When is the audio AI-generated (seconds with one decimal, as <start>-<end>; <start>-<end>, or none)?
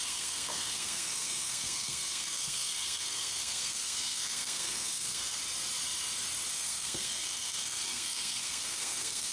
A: 0.0-5.4; 6.5-9.3